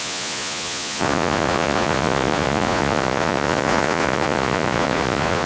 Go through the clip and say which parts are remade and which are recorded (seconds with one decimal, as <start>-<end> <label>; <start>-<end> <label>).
0.0-5.5 remade